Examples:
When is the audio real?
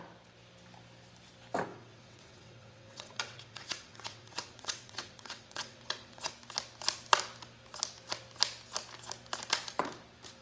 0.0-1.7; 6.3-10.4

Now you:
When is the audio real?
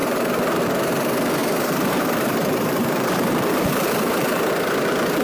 0.6-1.4; 4.5-5.2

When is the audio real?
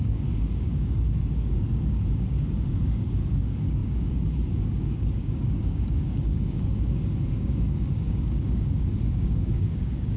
none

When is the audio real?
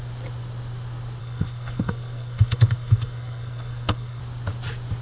0.0-1.2; 4.2-5.0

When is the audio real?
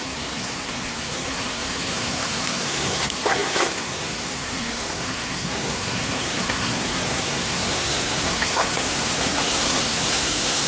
none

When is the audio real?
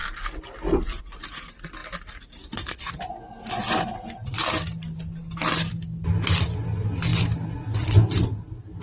0.0-8.8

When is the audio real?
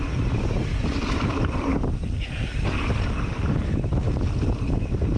0.0-5.2